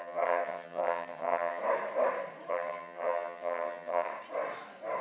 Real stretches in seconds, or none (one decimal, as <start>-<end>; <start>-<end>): 1.6-2.5; 4.1-5.0